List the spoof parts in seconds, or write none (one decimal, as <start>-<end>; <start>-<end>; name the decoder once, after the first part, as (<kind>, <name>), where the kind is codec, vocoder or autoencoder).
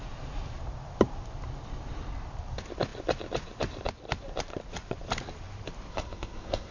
5.9-6.7 (codec, SNAC)